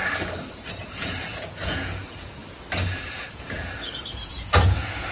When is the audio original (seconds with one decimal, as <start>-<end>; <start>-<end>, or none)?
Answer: 0.0-0.7; 2.4-3.0